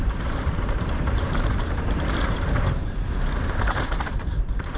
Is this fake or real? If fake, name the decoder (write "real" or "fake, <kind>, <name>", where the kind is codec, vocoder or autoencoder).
fake, vocoder, BigVGAN v2